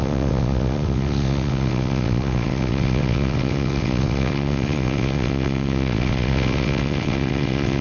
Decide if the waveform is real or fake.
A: fake